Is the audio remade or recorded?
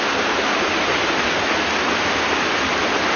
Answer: recorded